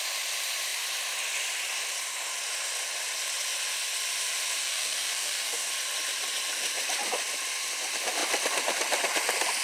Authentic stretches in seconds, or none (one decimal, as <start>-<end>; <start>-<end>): 0.0-4.6; 5.7-9.6